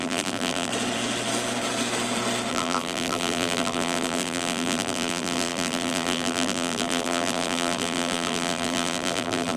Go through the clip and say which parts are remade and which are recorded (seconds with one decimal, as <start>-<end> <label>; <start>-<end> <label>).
0.0-0.7 remade; 0.7-2.5 recorded; 2.5-9.6 remade